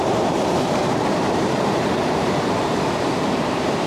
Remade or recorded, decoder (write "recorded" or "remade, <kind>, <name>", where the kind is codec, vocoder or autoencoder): remade, vocoder, BigVGAN v2